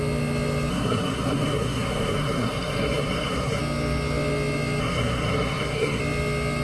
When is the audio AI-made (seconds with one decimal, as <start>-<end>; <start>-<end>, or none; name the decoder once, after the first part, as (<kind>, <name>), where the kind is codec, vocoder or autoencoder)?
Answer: 0.7-3.6 (codec, SNAC); 4.8-6.0

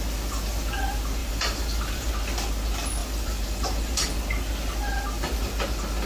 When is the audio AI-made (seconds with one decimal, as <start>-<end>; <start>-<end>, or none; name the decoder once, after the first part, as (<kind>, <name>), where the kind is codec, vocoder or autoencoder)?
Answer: 1.2-2.1 (vocoder, BigVGAN v2); 3.0-4.1

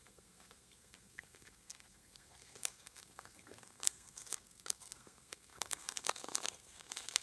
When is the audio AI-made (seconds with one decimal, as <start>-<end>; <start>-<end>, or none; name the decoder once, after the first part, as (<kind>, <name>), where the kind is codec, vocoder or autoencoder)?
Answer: 0.0-7.2 (codec, SNAC)

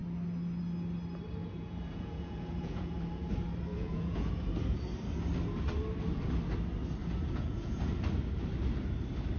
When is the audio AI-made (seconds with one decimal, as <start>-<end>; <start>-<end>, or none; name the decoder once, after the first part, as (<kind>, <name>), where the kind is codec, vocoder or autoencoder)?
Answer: 1.4-3.3 (vocoder, Vocos); 3.7-4.3; 7.0-7.9

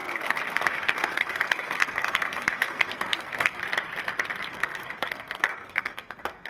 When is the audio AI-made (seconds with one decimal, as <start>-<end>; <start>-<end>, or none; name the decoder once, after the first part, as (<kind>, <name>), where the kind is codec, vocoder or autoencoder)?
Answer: 0.0-3.6 (codec, SNAC); 4.5-6.5

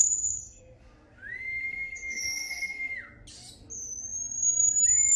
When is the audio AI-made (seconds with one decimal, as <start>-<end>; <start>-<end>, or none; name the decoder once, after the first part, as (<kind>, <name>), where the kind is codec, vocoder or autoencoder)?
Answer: 0.0-0.6 (codec, SNAC); 1.6-2.9

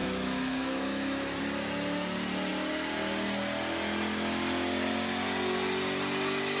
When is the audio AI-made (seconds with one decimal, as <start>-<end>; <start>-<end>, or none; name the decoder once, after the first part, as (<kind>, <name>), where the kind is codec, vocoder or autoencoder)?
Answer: 0.0-1.4 (autoencoder, DAC-VAE)

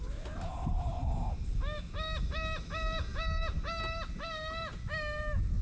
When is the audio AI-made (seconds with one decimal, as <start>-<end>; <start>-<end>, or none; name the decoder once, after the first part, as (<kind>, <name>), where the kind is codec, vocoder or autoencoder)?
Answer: none